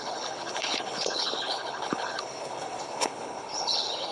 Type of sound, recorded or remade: remade